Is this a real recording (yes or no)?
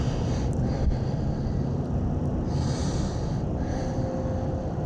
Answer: yes